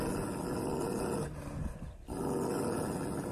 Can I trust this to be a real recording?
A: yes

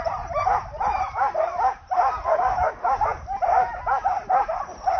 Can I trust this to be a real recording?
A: no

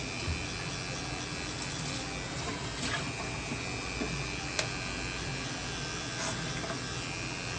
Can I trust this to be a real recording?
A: yes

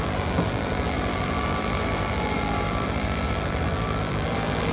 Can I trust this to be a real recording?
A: no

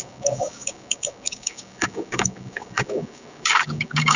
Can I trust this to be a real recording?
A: no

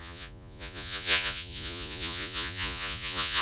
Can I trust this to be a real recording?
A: no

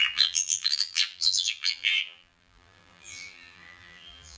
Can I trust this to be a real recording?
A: no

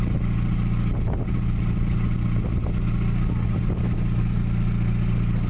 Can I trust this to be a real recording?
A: yes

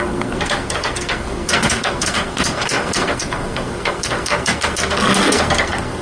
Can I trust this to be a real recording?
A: no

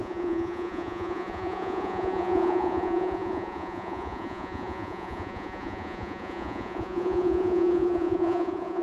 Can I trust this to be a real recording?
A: no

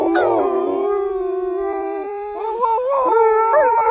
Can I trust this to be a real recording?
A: no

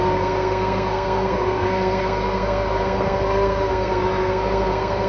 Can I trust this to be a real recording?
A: no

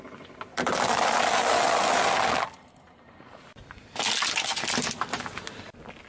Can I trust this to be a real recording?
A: yes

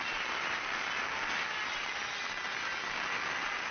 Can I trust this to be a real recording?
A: yes